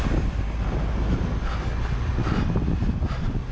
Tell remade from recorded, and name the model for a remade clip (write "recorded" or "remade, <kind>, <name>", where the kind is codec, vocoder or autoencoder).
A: recorded